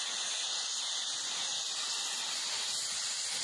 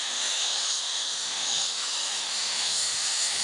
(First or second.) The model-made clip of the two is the second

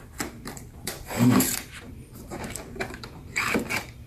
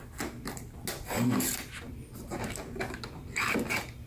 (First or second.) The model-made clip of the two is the first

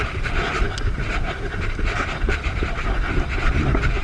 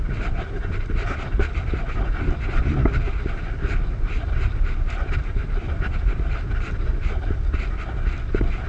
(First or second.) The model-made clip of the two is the first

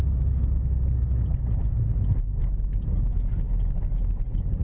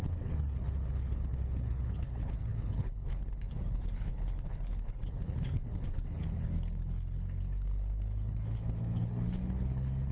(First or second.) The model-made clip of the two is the second